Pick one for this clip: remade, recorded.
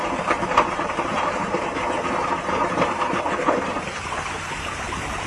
remade